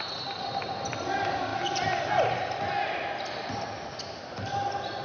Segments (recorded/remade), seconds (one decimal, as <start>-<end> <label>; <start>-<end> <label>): 0.0-5.0 recorded